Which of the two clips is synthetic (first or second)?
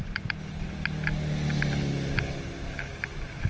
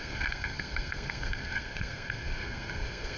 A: second